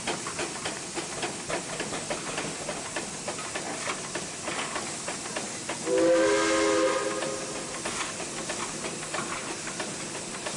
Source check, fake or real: real